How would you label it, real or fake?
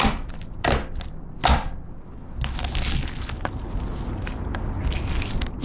real